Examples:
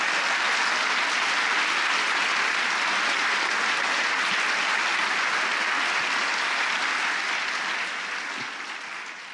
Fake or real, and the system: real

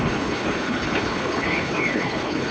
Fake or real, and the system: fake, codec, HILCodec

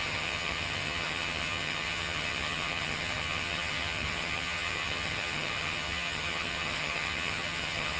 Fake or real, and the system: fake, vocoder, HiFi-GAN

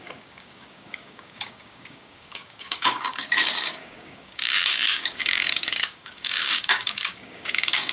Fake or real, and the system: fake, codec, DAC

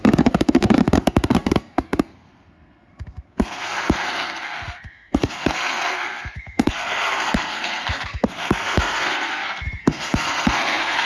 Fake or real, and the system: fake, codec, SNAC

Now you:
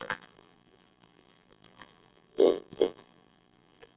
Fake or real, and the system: fake, vocoder, BigVGAN v2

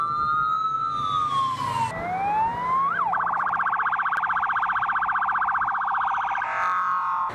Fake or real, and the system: real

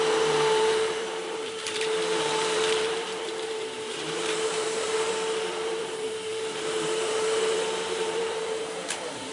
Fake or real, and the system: fake, vocoder, BigVGAN v2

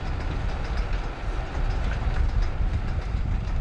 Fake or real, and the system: real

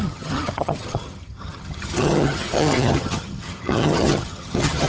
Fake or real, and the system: fake, vocoder, HiFi-GAN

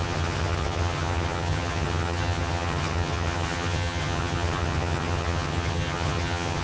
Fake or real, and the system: fake, vocoder, HiFi-GAN